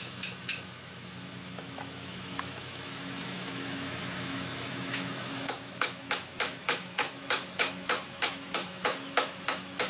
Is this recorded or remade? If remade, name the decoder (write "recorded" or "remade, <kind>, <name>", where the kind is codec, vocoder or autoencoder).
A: remade, autoencoder, DAC-VAE